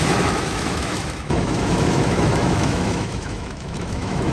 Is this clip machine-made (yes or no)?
yes